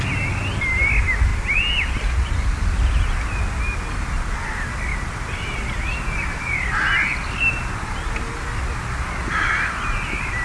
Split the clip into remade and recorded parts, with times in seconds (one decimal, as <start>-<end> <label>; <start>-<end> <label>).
0.0-1.3 recorded; 1.3-2.6 remade; 2.6-4.9 recorded; 4.9-5.8 remade; 5.8-10.4 recorded

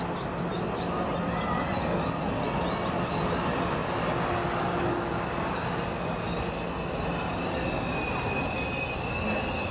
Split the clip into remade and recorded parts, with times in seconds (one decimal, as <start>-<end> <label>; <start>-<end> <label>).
0.0-9.7 recorded

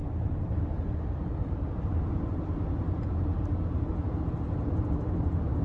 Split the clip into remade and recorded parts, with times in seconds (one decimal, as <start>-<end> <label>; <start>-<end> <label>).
0.0-3.4 remade; 3.4-5.6 recorded

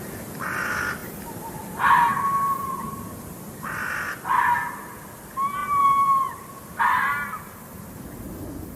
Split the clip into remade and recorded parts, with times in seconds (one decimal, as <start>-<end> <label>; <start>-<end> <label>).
0.0-1.0 recorded; 1.0-1.5 remade; 1.5-2.1 recorded; 2.1-3.0 remade; 3.0-5.6 recorded; 5.6-6.8 remade; 6.8-8.8 recorded

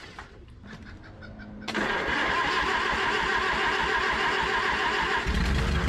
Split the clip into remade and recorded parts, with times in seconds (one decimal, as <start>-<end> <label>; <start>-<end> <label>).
0.0-3.3 remade; 3.3-4.6 recorded; 4.6-5.9 remade

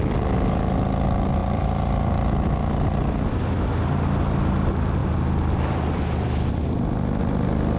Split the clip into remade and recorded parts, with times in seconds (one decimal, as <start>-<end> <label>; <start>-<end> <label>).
0.0-1.4 recorded; 1.4-2.1 remade; 2.1-7.8 recorded

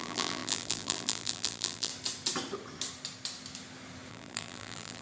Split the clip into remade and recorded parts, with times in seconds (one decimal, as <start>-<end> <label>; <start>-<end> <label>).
0.0-1.9 remade; 1.9-4.1 recorded; 4.1-5.0 remade